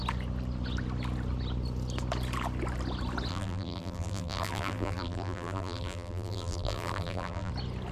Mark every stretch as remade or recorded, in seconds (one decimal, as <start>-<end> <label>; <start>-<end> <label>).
0.0-3.3 recorded; 3.3-7.5 remade; 7.5-7.9 recorded